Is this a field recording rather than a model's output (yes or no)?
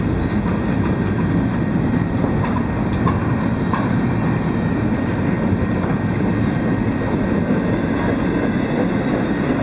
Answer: yes